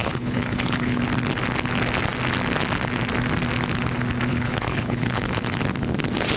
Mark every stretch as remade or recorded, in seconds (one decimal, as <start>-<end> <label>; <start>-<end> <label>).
0.0-1.0 remade; 1.0-4.3 recorded; 4.3-5.6 remade; 5.6-6.4 recorded